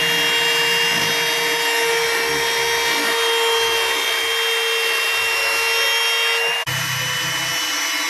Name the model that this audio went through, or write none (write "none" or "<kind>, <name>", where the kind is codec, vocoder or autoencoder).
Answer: none